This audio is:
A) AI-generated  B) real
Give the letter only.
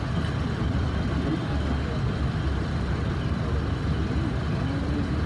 B